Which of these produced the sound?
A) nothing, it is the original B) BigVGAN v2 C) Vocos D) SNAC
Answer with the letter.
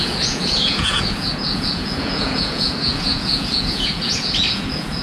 C